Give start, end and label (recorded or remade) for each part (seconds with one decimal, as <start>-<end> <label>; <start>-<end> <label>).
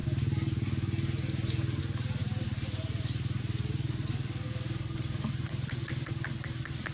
0.0-2.2 recorded; 2.2-3.4 remade; 3.4-6.9 recorded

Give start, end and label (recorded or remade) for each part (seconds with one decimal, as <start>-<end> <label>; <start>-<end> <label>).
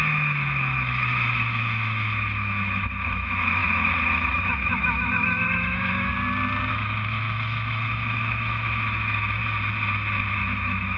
0.0-6.1 remade; 6.1-6.7 recorded; 6.7-9.4 remade; 9.4-10.3 recorded; 10.3-11.0 remade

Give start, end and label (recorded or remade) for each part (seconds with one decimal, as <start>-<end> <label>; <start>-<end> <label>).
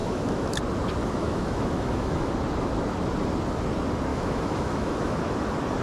0.0-0.6 remade; 0.6-1.0 recorded; 1.0-2.3 remade; 2.3-4.1 recorded; 4.1-5.2 remade; 5.2-5.8 recorded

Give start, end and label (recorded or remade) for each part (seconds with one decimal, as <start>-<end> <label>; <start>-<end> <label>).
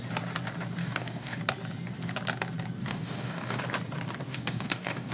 0.0-0.8 recorded; 0.8-1.4 remade; 1.4-2.8 recorded; 2.8-3.6 remade; 3.6-4.3 recorded; 4.3-5.1 remade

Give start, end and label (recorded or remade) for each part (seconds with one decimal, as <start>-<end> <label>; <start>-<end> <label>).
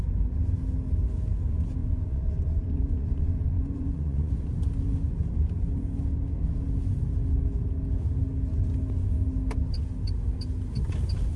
0.0-1.8 recorded; 1.8-4.3 remade; 4.3-11.4 recorded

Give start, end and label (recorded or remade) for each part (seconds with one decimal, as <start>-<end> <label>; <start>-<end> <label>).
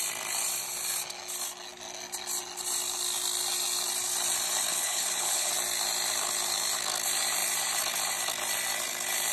0.0-4.7 recorded; 4.7-5.5 remade; 5.5-9.3 recorded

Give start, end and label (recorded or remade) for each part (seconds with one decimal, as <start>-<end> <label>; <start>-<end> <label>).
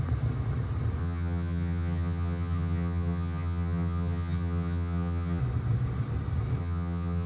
0.0-1.0 recorded; 1.0-5.4 remade; 5.4-6.6 recorded; 6.6-7.3 remade